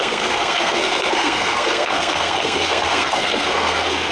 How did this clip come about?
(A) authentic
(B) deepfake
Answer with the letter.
B